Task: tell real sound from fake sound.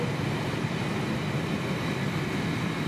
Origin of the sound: real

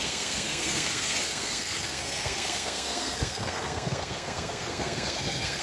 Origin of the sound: fake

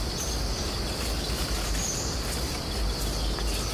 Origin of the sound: real